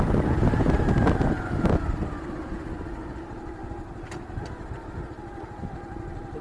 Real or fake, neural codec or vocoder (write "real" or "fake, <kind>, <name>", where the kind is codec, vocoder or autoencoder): real